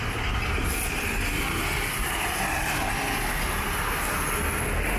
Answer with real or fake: real